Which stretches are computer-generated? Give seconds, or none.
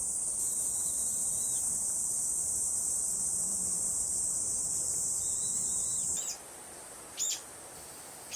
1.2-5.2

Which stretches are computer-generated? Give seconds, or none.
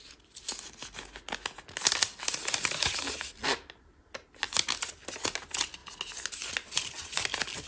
none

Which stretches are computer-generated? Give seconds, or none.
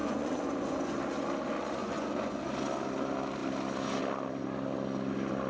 0.0-1.0; 1.8-2.4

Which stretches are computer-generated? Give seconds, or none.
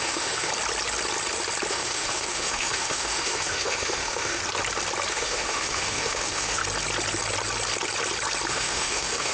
0.0-0.5; 1.7-4.4; 5.1-6.6; 8.5-9.3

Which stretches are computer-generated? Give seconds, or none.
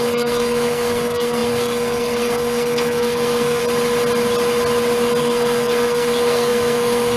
0.0-3.6; 5.2-7.2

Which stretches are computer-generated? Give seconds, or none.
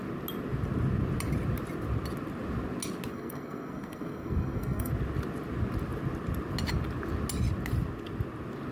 3.1-4.9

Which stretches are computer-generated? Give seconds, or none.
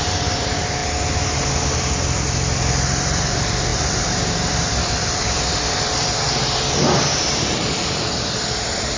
0.0-0.8; 1.7-7.2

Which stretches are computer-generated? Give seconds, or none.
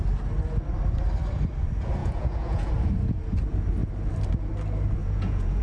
2.0-2.7; 5.0-5.6